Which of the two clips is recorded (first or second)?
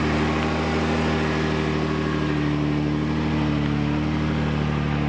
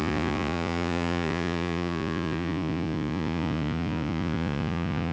first